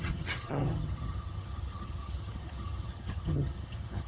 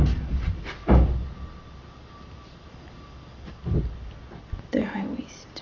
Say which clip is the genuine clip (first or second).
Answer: second